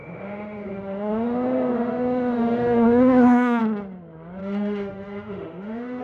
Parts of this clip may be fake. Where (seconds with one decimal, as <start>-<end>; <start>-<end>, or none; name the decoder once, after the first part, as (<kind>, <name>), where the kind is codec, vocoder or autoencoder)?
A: 0.0-3.6 (autoencoder, DAC-VAE); 4.4-6.0